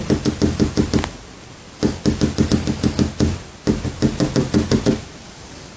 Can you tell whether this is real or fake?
real